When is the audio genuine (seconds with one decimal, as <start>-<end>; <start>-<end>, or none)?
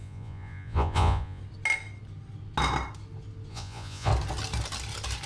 1.4-3.5; 4.1-5.3